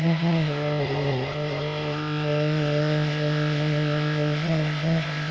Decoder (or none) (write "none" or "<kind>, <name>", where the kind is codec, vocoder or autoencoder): codec, ZipCodec